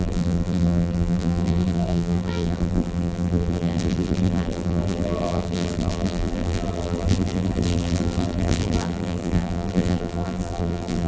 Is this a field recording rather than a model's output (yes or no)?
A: no